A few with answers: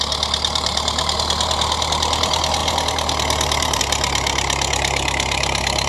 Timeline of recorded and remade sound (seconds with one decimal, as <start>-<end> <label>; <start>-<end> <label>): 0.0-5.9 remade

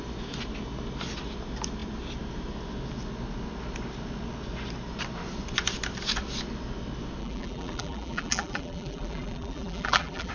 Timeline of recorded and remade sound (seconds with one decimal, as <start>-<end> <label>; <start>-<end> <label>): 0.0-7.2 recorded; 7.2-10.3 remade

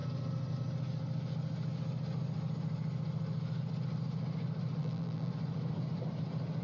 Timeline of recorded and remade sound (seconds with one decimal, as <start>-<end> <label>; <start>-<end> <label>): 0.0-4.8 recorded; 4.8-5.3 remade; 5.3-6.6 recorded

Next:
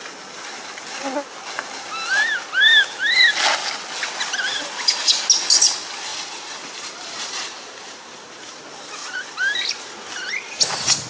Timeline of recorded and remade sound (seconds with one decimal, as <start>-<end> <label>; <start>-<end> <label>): 0.0-6.1 recorded; 6.1-8.6 remade; 8.6-9.0 recorded; 9.0-9.9 remade; 9.9-11.1 recorded

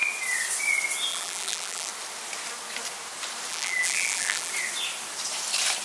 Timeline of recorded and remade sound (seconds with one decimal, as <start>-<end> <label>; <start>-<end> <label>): 0.0-1.1 recorded; 1.1-1.9 remade; 1.9-3.5 recorded; 3.5-4.5 remade; 4.5-5.8 recorded

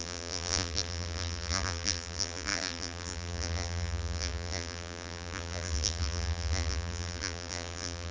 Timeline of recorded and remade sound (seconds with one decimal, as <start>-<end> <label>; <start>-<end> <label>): 0.0-8.1 remade